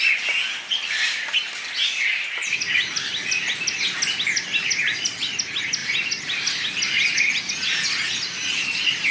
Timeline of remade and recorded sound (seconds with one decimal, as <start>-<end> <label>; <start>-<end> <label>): 0.0-9.1 recorded